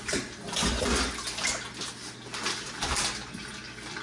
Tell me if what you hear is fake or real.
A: real